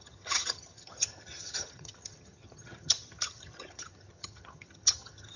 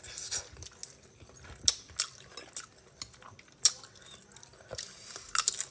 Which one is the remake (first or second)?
first